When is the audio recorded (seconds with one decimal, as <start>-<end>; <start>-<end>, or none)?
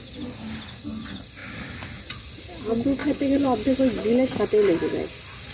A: 0.0-5.5